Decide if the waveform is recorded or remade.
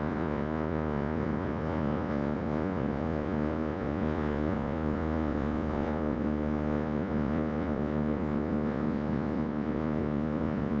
remade